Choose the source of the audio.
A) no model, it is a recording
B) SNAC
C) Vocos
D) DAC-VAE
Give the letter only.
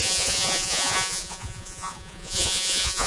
C